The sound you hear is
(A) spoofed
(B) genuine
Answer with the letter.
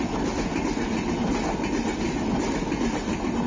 B